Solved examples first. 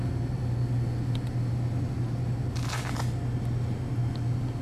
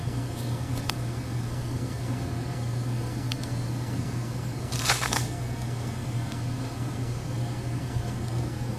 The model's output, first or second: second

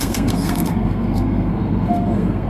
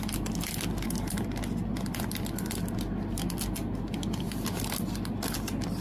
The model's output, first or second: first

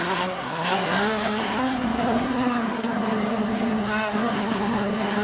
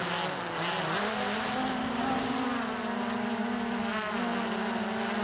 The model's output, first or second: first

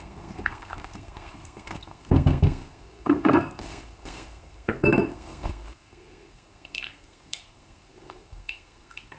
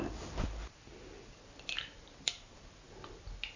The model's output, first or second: first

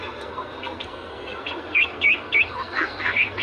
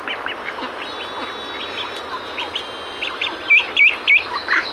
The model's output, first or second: first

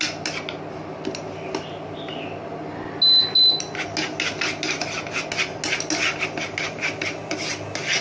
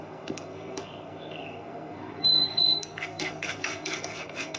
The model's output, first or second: second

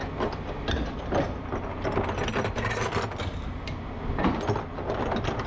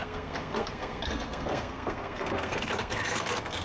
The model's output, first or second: second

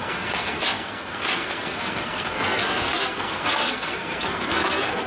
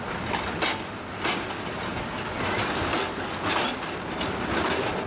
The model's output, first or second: first